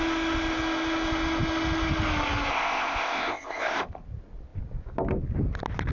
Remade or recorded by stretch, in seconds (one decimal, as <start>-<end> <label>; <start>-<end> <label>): 0.0-2.5 recorded; 2.5-3.8 remade; 3.8-5.9 recorded